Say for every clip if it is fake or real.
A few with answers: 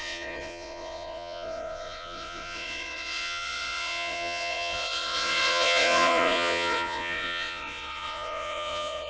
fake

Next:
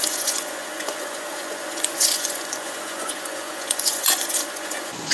fake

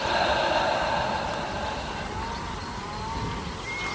real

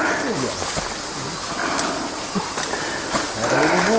real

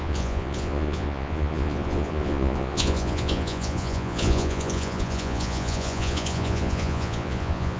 fake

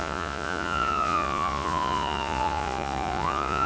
fake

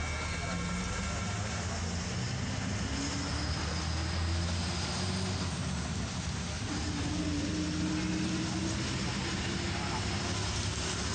real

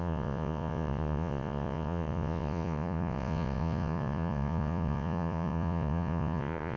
fake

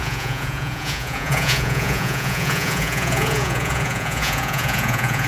fake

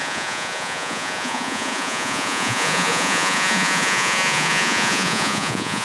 fake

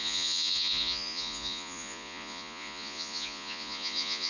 fake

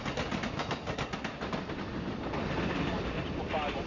real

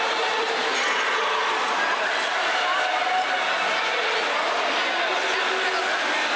real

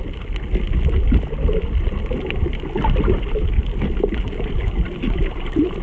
real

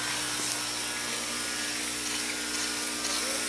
real